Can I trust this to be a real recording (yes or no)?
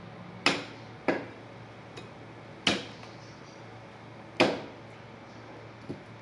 yes